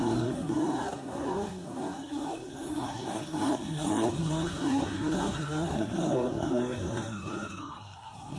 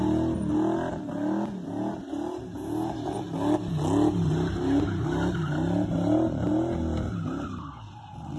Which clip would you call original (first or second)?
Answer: second